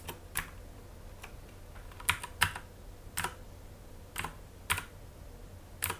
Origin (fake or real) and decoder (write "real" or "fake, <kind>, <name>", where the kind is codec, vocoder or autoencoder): real